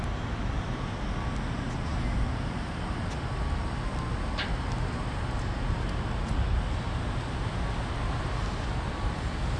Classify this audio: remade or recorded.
recorded